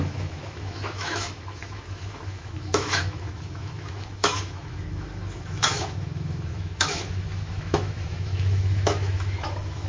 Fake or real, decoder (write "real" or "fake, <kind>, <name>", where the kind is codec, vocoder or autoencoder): fake, autoencoder, DAC-VAE